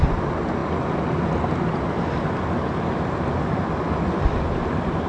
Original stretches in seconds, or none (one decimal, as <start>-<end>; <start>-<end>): 0.0-5.1